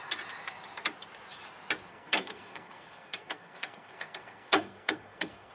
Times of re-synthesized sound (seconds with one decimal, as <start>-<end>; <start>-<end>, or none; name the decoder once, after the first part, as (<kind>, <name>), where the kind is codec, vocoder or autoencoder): 1.9-5.5 (codec, SNAC)

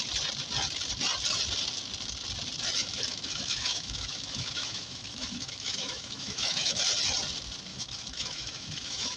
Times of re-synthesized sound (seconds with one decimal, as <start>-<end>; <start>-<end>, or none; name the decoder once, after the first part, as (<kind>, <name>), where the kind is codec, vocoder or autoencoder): 2.8-6.8 (autoencoder, DAC-VAE); 7.7-9.2

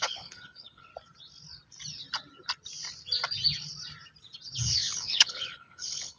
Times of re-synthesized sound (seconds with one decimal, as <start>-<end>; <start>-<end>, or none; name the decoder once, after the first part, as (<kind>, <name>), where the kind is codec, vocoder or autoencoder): 0.0-0.9 (codec, HILCodec); 4.6-6.2

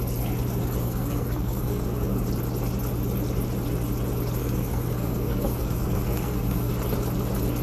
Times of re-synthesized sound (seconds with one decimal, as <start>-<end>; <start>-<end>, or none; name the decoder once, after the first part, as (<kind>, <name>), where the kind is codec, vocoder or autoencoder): 0.8-2.2 (codec, SNAC); 4.4-6.7